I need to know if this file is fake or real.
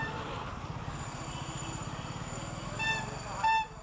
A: real